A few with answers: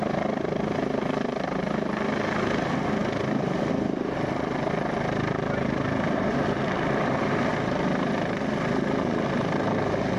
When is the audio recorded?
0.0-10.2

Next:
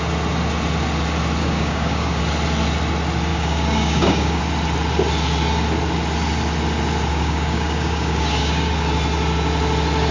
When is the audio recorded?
0.0-1.4; 2.2-3.3; 4.4-7.1; 8.7-10.1

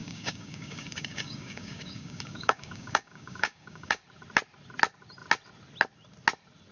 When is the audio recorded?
4.0-6.7

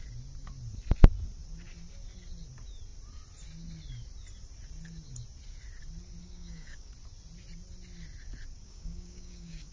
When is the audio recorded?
0.0-6.2; 6.9-8.6

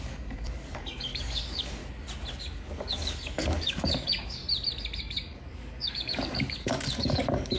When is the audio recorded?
1.8-2.4; 4.4-5.0

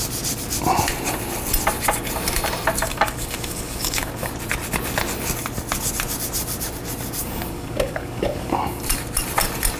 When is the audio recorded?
0.0-2.9; 4.3-7.2; 8.8-9.8

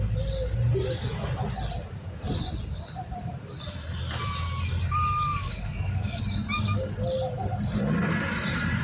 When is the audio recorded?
0.0-5.3; 6.2-8.8